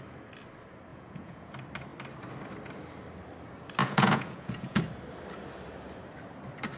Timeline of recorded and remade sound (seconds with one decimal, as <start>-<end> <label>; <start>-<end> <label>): 0.0-0.9 recorded; 0.9-1.5 remade; 1.5-3.8 recorded; 3.8-4.8 remade; 4.8-6.8 recorded